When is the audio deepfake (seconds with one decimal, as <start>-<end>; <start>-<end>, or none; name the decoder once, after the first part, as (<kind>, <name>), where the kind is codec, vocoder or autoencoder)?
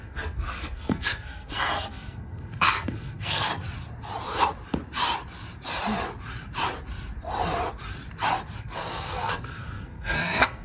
0.0-3.5 (codec, SNAC); 8.6-10.6